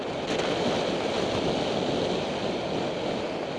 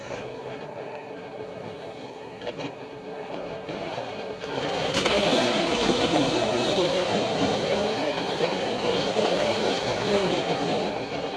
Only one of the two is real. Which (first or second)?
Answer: first